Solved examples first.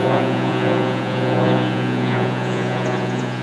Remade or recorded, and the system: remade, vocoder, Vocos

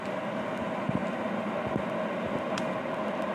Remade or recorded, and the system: recorded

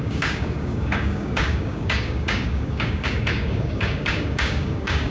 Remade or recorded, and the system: remade, codec, DAC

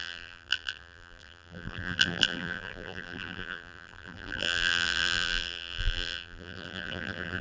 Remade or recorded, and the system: remade, vocoder, BigVGAN v2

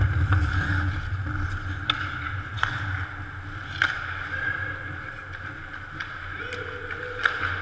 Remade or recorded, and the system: recorded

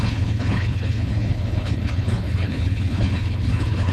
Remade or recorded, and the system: remade, codec, HILCodec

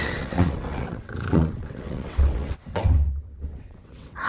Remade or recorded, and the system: remade, vocoder, WaveNeXt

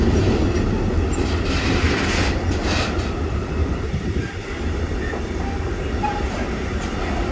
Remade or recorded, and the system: recorded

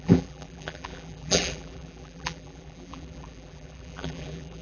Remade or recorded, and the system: remade, vocoder, BigVGAN v2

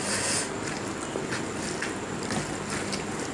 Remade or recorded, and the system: recorded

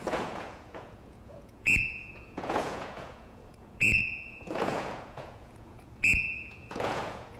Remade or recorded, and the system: remade, vocoder, Vocos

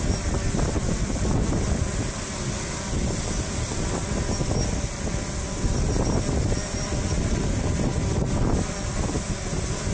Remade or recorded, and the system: recorded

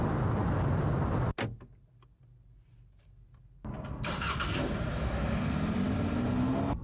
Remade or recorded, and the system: recorded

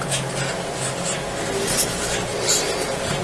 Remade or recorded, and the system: recorded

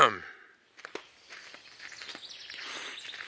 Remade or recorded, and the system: recorded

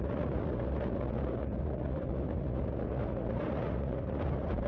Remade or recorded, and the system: remade, vocoder, Vocos